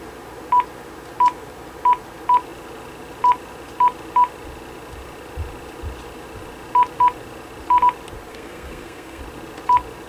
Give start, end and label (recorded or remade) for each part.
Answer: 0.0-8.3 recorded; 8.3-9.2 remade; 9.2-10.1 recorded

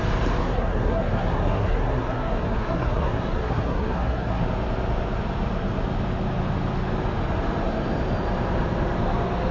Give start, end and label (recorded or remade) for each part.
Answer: 0.0-0.4 recorded; 0.4-4.4 remade; 4.4-9.5 recorded

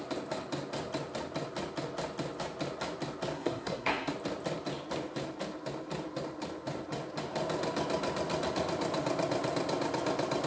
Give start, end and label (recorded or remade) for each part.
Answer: 0.0-3.3 recorded; 3.3-4.1 remade; 4.1-10.5 recorded